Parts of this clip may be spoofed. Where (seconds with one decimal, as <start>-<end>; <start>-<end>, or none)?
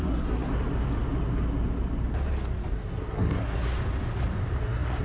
0.0-0.5; 2.7-3.7; 4.6-5.0